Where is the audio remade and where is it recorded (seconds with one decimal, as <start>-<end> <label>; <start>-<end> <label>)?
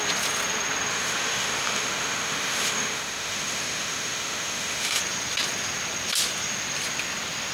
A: 0.0-0.9 recorded; 0.9-5.0 remade; 5.0-7.5 recorded